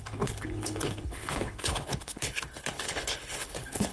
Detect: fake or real fake